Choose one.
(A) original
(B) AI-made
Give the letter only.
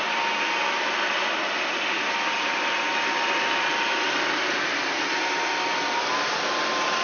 A